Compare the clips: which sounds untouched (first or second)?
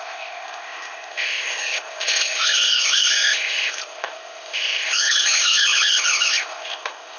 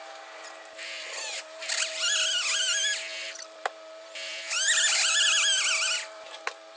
second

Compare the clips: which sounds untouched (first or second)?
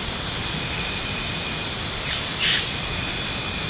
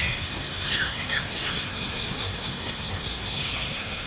first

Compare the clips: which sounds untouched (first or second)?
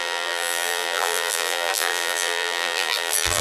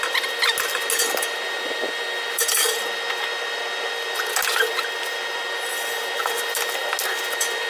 second